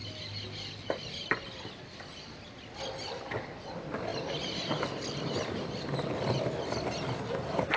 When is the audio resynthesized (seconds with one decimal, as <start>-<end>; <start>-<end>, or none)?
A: none